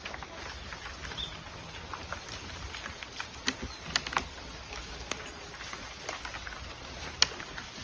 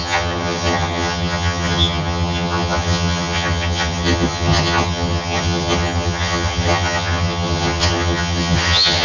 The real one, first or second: first